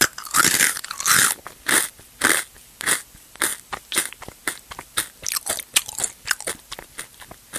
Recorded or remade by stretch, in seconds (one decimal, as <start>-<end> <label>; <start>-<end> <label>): 0.0-7.6 recorded